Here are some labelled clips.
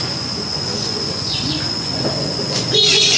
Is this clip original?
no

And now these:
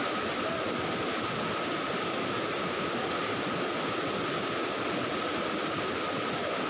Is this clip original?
yes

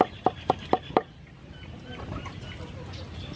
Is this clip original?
yes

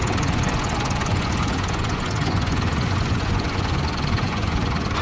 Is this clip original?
no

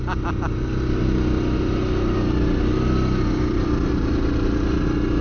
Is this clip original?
yes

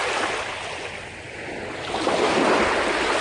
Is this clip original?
yes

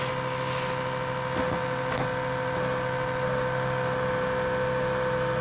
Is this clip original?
yes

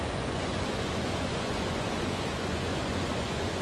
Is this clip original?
no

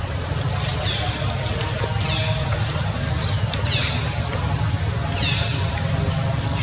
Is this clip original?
yes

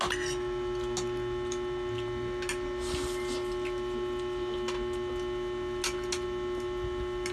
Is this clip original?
yes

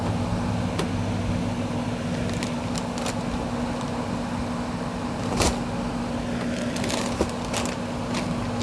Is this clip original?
yes